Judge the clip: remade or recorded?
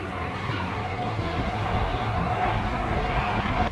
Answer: remade